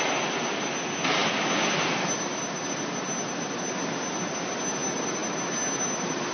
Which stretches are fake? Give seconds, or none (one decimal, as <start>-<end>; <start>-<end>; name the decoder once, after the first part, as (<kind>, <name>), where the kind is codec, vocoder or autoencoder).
none